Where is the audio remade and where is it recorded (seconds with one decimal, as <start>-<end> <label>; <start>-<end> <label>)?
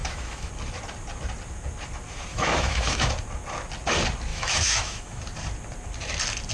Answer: 0.0-0.5 remade; 0.5-2.3 recorded; 2.3-3.1 remade; 3.1-4.3 recorded; 4.3-5.2 remade; 5.2-6.5 recorded